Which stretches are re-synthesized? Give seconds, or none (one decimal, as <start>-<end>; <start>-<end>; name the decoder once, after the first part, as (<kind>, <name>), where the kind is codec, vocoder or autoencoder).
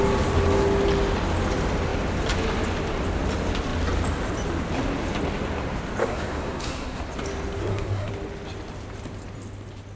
6.0-7.0 (codec, SNAC); 7.6-8.1